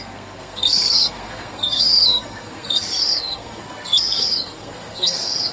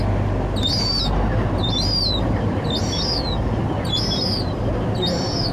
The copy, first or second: first